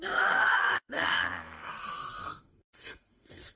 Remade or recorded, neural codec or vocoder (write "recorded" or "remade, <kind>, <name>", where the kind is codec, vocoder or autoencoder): remade, codec, SNAC